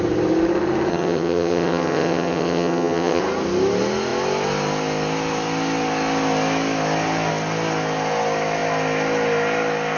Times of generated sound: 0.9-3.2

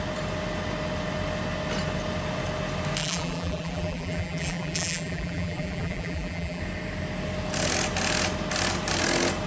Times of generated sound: 3.0-6.6

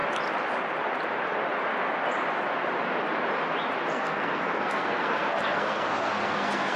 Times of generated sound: 3.9-6.8

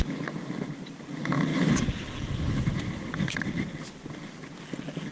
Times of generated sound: none

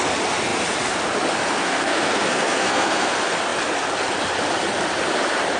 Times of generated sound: 1.6-3.1

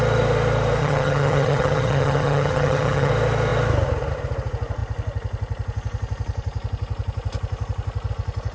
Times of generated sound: 0.8-3.1

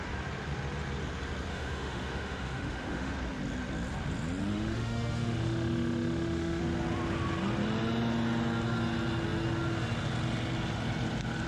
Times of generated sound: 1.5-3.1; 4.5-6.6

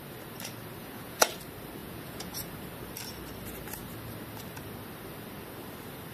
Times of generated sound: 0.8-1.3; 1.8-2.5